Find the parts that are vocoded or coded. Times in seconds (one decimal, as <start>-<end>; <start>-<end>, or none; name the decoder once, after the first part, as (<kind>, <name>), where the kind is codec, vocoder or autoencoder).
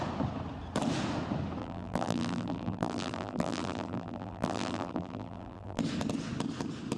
1.6-5.8 (vocoder, BigVGAN v2)